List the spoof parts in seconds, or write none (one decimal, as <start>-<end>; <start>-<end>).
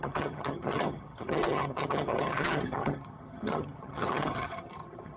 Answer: 0.0-5.2